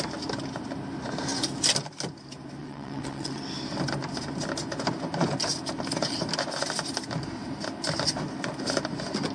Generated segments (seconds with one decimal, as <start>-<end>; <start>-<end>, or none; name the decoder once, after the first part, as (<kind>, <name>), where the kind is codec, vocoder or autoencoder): 2.6-3.4 (vocoder, WaveNeXt)